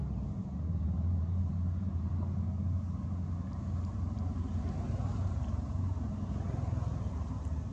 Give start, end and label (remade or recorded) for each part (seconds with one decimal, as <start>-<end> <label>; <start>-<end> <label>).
0.0-2.1 remade; 2.1-7.7 recorded